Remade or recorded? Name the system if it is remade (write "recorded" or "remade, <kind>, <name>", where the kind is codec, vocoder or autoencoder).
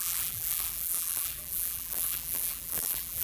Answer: remade, vocoder, BigVGAN v2